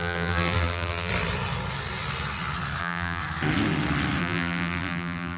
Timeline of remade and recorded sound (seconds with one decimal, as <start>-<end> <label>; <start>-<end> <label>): 0.0-1.1 remade; 1.1-2.8 recorded; 2.8-3.2 remade; 3.2-4.2 recorded; 4.2-5.4 remade